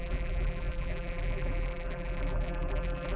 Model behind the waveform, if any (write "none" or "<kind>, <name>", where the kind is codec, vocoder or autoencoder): vocoder, BigVGAN v2